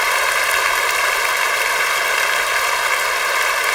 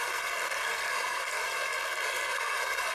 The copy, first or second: second